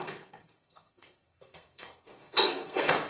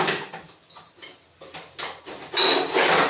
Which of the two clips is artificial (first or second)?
first